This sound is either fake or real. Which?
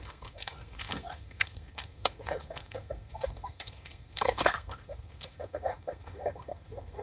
fake